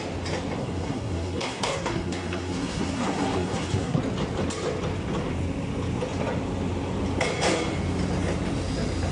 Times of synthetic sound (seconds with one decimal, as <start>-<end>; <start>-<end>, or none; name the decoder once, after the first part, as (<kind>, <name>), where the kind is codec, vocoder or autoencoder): 0.6-4.0 (codec, SNAC)